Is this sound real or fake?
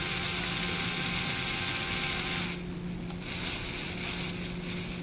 real